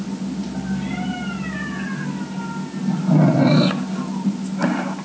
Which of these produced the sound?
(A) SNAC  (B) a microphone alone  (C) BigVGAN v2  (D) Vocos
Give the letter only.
B